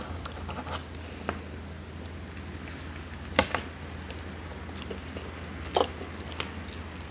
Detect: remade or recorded recorded